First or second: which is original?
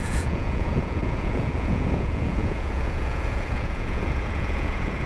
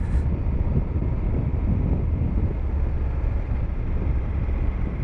second